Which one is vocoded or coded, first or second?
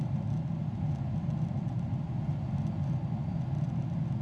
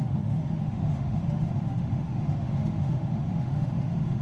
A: second